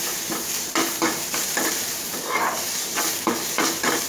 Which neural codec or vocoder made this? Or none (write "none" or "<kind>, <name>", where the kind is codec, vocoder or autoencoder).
vocoder, BigVGAN v2